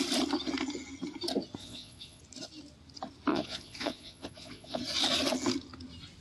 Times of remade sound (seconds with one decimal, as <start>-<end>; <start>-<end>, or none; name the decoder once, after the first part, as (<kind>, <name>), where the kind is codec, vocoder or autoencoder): 1.6-2.2 (vocoder, Vocos); 3.3-4.8